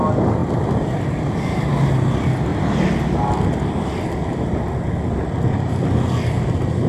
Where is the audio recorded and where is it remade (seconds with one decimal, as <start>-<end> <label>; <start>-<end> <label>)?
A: 0.0-0.4 recorded; 0.4-1.4 remade; 1.4-6.9 recorded